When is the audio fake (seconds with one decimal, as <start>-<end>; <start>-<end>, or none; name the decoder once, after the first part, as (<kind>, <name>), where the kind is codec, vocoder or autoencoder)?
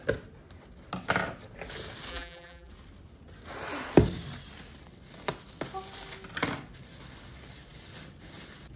2.1-2.7 (vocoder, BigVGAN v2)